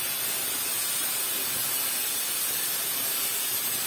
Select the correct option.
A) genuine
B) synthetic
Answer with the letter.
A